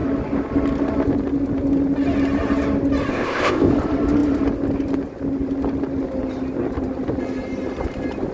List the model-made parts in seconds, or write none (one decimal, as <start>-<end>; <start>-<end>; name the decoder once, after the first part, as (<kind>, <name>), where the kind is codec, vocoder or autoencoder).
3.1-3.7 (codec, ZipCodec)